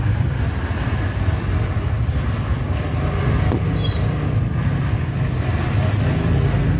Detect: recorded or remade recorded